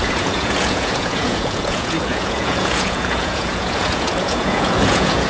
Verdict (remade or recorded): remade